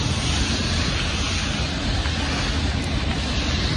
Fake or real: real